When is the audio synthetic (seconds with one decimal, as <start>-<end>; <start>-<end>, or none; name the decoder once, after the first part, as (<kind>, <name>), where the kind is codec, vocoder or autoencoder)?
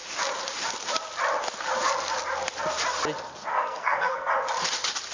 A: 3.5-4.3 (codec, SNAC)